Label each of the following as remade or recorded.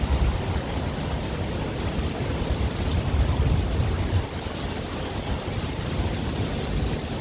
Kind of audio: recorded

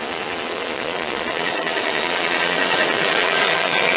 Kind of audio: remade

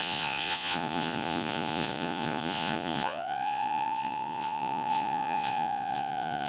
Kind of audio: remade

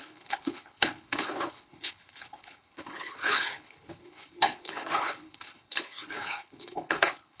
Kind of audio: remade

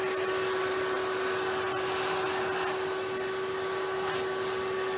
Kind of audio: recorded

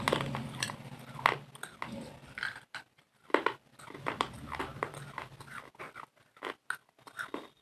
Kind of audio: recorded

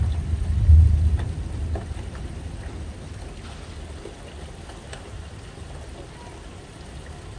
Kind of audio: recorded